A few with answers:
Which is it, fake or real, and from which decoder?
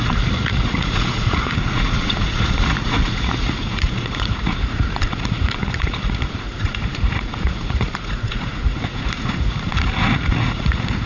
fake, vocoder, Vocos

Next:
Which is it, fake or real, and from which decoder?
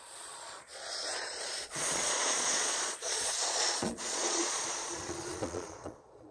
fake, vocoder, Vocos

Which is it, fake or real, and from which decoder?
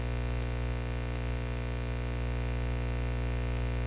real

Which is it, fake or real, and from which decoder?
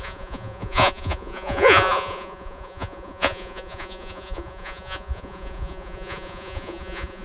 fake, vocoder, Vocos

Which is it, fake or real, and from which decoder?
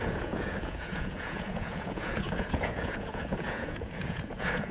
fake, vocoder, Vocos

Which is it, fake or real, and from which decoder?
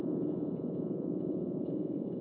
fake, vocoder, Vocos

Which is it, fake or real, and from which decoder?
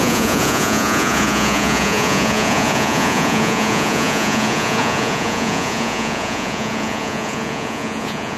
fake, vocoder, Vocos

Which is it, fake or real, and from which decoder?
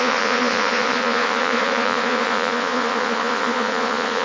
fake, vocoder, Vocos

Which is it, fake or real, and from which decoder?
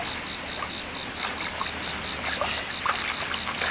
real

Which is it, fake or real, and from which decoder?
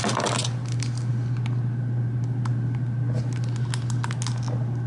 real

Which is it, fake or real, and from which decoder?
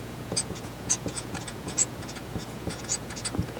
fake, vocoder, Vocos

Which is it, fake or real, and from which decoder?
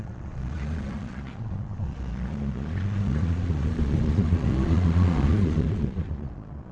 fake, vocoder, Vocos